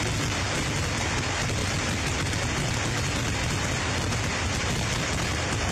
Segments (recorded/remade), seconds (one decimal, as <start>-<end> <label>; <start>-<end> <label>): 0.0-5.7 recorded